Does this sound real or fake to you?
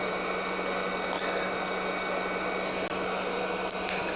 real